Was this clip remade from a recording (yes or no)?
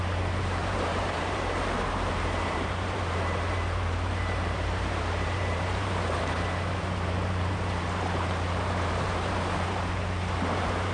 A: yes